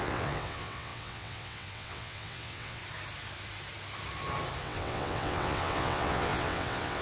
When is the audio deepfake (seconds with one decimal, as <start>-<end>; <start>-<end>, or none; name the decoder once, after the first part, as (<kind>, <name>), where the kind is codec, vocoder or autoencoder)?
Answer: 0.0-2.8 (vocoder, WaveNeXt); 4.6-7.0